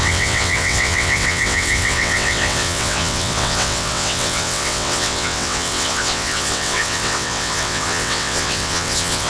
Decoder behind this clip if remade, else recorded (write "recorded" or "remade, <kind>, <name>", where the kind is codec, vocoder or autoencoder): remade, vocoder, WaveNeXt